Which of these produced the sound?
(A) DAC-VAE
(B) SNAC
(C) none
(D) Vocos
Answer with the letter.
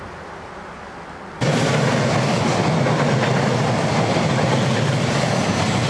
C